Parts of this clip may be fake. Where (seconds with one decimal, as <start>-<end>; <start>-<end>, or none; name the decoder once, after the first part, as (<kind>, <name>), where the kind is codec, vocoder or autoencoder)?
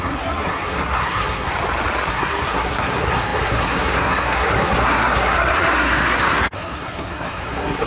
0.0-1.5 (codec, SNAC); 2.1-7.9